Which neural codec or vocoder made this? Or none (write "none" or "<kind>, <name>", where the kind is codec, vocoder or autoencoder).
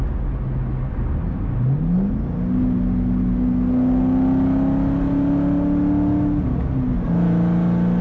none